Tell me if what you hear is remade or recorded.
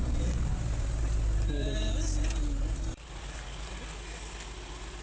recorded